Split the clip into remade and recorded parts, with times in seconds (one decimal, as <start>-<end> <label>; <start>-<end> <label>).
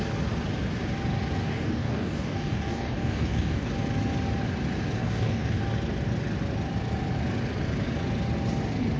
0.0-1.4 recorded; 1.4-3.7 remade; 3.7-5.0 recorded; 5.0-5.6 remade; 5.6-9.0 recorded